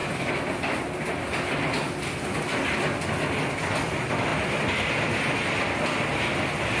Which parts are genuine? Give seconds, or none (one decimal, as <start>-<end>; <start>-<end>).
0.0-6.8

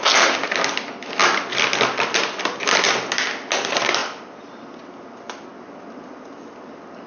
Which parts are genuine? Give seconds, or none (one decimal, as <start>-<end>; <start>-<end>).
0.0-7.1

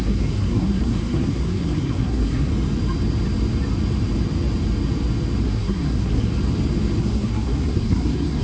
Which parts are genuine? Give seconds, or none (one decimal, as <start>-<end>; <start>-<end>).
2.5-5.4; 6.3-7.0

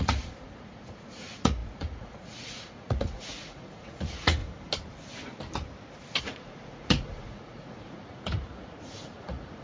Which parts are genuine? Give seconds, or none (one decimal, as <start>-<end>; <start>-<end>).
4.4-6.2

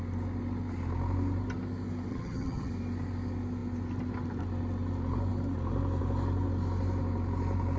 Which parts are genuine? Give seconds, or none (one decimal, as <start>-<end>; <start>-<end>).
0.0-2.1; 2.7-7.8

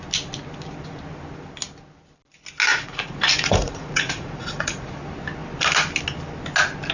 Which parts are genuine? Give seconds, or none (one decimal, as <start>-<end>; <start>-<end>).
0.0-2.7; 4.9-6.9